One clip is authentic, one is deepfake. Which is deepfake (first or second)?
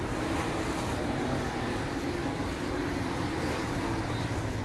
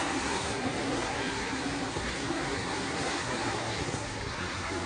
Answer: second